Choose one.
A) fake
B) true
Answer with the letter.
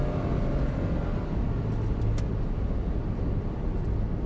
B